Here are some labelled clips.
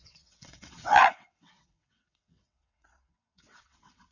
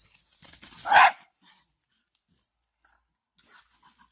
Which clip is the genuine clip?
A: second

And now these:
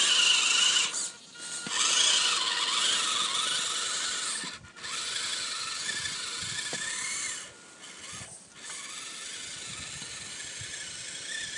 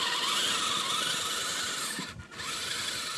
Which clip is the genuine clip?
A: first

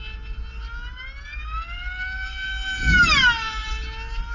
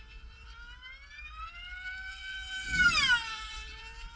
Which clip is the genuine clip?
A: first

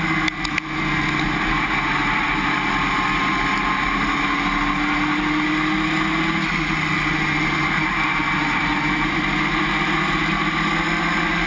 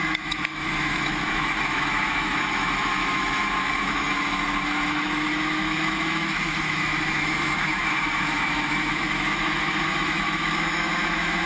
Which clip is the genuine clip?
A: first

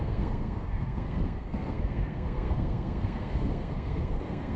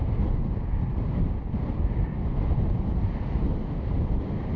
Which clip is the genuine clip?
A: second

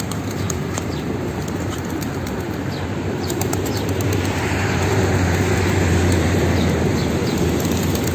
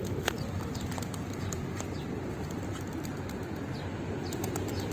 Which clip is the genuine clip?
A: second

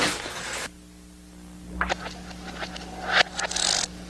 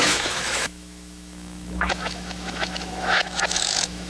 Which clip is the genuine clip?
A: first